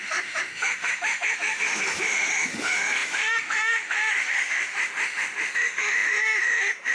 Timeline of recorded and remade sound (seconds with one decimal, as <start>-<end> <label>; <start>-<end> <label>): 0.0-6.9 remade